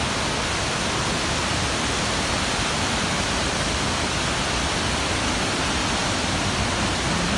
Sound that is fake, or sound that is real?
real